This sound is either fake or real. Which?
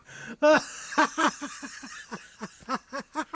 real